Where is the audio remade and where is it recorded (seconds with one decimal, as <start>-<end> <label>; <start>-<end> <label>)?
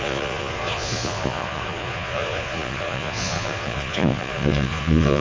0.0-5.2 remade